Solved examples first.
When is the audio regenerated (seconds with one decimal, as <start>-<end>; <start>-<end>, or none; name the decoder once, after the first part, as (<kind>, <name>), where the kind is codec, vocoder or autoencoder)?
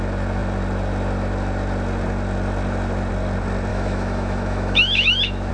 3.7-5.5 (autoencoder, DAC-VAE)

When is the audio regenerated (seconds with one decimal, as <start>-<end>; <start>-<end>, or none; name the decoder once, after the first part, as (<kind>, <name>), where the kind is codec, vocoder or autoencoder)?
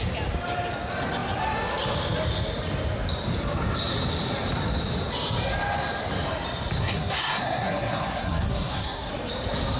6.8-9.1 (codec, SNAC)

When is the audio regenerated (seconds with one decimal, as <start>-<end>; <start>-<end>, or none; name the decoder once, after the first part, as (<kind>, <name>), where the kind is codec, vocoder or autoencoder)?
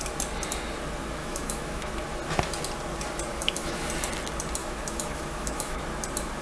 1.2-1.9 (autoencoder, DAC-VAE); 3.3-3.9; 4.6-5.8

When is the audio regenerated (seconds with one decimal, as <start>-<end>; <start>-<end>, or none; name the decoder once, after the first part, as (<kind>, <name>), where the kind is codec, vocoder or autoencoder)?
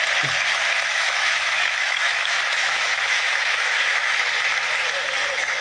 0.9-4.3 (autoencoder, DAC-VAE)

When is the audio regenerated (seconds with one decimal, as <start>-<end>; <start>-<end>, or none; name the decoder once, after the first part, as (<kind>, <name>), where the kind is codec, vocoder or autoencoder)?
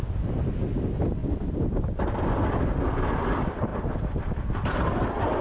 0.0-5.4 (vocoder, BigVGAN v2)